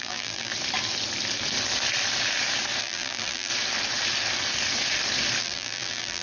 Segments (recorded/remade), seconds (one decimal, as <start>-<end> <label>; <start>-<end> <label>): 0.0-0.5 remade; 0.5-2.8 recorded; 2.8-3.5 remade; 3.5-5.4 recorded; 5.4-6.2 remade